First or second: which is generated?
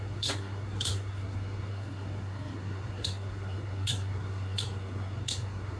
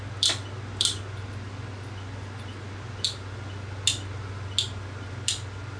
first